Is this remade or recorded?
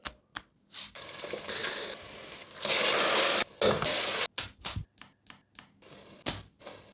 recorded